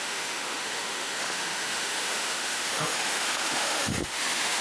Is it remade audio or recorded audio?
remade